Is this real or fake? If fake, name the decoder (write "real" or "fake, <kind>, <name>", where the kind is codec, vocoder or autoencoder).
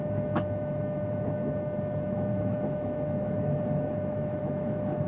fake, autoencoder, DAC-VAE